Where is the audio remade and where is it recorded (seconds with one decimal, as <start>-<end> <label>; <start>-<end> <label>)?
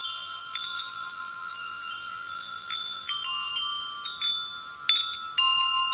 0.0-3.5 remade; 3.5-5.9 recorded